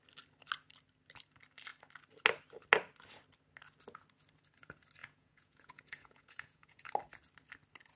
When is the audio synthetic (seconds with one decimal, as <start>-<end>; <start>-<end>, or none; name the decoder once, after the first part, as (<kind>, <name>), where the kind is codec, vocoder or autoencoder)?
5.0-6.9 (vocoder, Vocos)